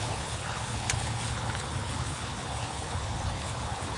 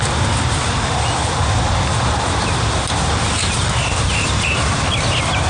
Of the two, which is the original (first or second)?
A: second